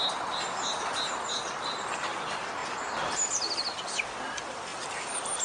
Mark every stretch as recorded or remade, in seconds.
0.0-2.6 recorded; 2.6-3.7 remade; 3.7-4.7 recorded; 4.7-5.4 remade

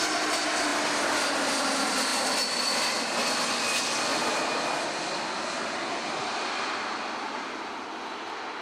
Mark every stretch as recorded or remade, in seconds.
0.0-6.2 recorded; 6.2-7.7 remade; 7.7-8.6 recorded

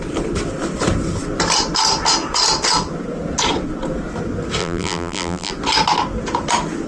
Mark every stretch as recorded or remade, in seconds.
0.0-4.6 recorded; 4.6-5.5 remade; 5.5-6.9 recorded

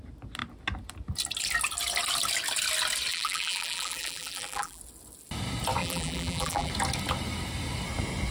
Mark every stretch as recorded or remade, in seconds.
0.0-3.1 recorded; 3.1-4.8 remade; 4.8-5.8 recorded; 5.8-6.7 remade; 6.7-8.3 recorded

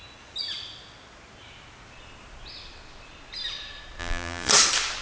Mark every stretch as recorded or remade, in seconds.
0.0-4.0 recorded; 4.0-4.5 remade; 4.5-5.0 recorded

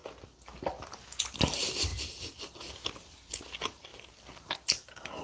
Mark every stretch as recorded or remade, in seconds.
0.0-1.2 recorded; 1.2-1.9 remade; 1.9-2.7 recorded; 2.7-3.9 remade; 3.9-4.4 recorded; 4.4-5.2 remade

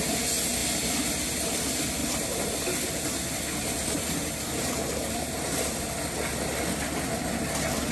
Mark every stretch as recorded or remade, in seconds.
0.0-7.9 recorded

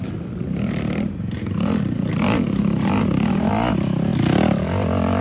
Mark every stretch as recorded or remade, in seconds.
0.0-0.4 recorded; 0.4-3.5 remade; 3.5-5.2 recorded